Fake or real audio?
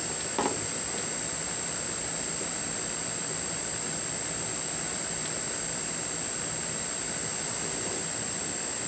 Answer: real